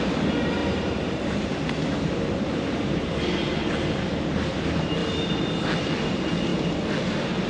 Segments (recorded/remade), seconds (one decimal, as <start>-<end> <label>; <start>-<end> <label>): 0.0-0.6 recorded; 0.6-3.2 remade; 3.2-7.5 recorded